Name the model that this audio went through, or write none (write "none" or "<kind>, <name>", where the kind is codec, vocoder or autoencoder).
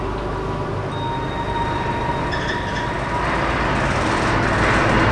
none